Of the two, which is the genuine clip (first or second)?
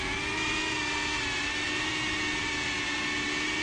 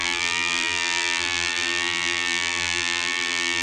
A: first